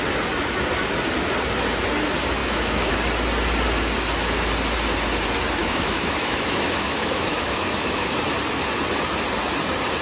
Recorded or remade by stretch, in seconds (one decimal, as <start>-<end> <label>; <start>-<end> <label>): 0.0-2.4 recorded; 2.4-2.9 remade; 2.9-5.6 recorded; 5.6-8.1 remade; 8.1-10.0 recorded